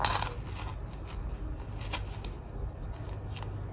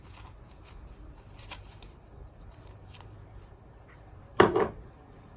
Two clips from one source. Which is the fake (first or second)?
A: second